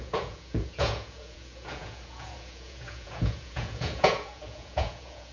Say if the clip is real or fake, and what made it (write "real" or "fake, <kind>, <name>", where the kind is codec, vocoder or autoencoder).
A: fake, vocoder, Vocos